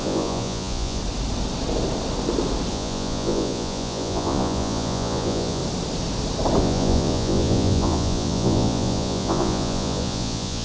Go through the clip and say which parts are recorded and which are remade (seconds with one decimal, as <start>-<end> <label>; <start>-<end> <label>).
0.0-1.0 remade; 1.0-2.7 recorded; 2.7-5.6 remade; 5.6-6.6 recorded; 6.6-10.6 remade